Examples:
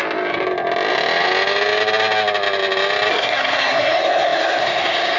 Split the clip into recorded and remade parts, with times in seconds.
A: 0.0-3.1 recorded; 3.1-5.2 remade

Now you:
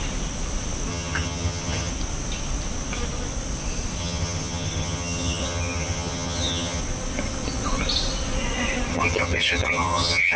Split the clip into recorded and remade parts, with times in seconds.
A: 0.0-0.9 recorded; 0.9-1.9 remade; 1.9-4.0 recorded; 4.0-6.8 remade; 6.8-8.9 recorded; 8.9-10.4 remade

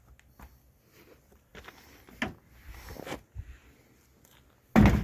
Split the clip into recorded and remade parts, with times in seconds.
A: 0.0-5.0 recorded

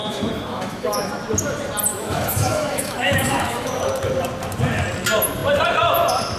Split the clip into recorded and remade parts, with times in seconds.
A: 0.0-1.1 remade; 1.1-1.9 recorded; 1.9-3.8 remade; 3.8-6.4 recorded

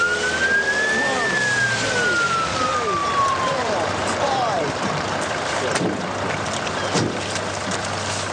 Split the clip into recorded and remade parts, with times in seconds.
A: 0.0-3.0 recorded; 3.0-5.3 remade; 5.3-8.3 recorded

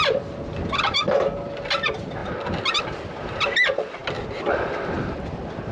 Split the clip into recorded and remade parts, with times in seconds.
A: 0.0-5.7 recorded